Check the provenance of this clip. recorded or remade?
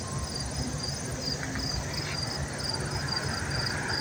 recorded